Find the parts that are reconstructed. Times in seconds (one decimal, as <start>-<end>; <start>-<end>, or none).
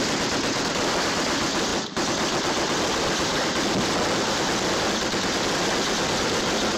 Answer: none